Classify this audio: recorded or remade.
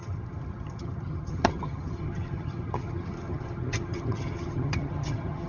remade